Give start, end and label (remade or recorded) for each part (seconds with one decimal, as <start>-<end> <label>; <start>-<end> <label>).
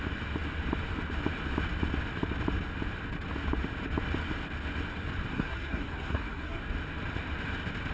0.0-5.3 recorded; 5.3-6.6 remade; 6.6-7.9 recorded